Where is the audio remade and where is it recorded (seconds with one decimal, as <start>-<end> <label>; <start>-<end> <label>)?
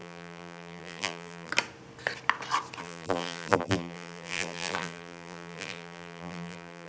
0.0-1.5 remade; 1.5-2.8 recorded; 2.8-6.9 remade